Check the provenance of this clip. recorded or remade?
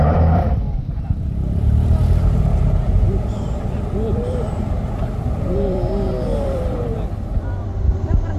remade